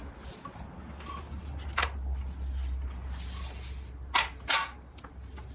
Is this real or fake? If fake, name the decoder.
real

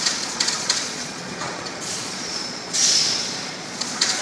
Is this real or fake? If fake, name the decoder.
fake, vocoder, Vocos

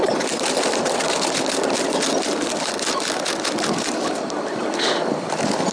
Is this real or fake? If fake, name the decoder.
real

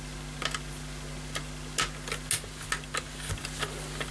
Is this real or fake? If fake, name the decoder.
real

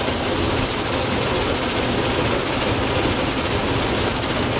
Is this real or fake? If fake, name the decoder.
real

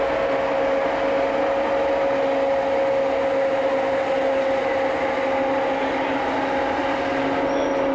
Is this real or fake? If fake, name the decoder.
real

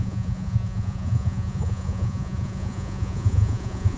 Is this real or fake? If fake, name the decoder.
fake, vocoder, Vocos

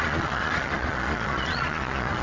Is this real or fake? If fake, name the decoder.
fake, vocoder, Vocos